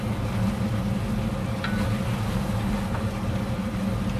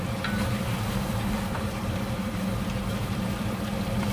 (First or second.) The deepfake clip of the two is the second